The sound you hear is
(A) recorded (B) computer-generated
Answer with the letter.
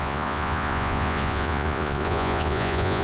B